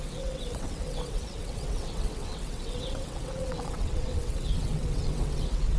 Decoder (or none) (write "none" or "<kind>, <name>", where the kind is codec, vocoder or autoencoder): vocoder, WaveNeXt